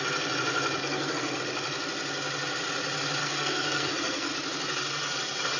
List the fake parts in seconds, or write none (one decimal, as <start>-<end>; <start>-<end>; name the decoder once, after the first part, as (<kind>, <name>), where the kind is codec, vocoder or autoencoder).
0.8-1.4 (codec, SNAC); 3.2-4.3